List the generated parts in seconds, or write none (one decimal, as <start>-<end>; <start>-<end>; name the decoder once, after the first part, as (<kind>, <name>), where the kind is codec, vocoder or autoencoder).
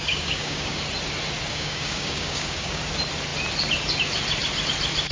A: 0.0-0.8 (codec, DAC); 1.5-2.8